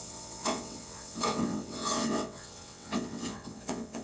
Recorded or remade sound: remade